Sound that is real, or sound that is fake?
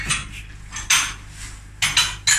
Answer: real